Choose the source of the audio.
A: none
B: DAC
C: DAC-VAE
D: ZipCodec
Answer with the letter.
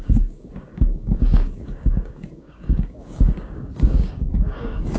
B